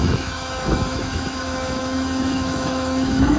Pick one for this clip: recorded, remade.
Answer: remade